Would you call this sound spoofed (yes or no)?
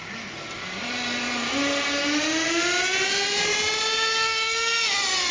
no